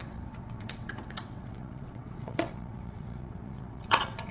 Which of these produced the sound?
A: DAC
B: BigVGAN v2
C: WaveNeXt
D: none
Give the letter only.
C